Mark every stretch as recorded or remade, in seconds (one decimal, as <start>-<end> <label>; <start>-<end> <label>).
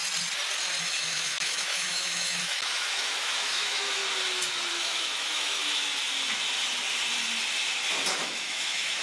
0.0-0.8 recorded; 0.8-4.0 remade; 4.0-4.7 recorded; 4.7-5.6 remade; 5.6-8.1 recorded; 8.1-9.0 remade